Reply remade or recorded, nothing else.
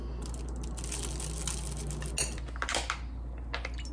recorded